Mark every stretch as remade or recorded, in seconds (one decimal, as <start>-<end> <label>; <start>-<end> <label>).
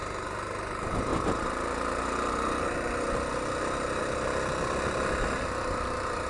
0.0-6.3 recorded